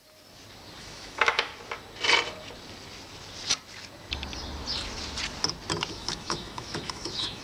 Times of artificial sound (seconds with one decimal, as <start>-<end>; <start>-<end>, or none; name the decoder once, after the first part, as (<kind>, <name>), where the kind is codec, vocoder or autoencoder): 0.8-1.5 (autoencoder, DAC-VAE); 5.9-7.4